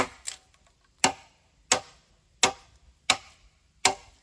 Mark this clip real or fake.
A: real